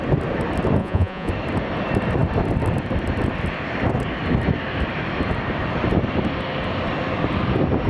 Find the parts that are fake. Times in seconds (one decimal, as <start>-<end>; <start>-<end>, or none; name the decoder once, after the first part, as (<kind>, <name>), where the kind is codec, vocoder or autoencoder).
0.8-1.3 (vocoder, Vocos)